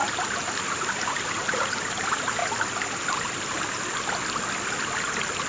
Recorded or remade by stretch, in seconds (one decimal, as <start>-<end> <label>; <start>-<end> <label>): 0.0-2.4 remade; 2.4-5.5 recorded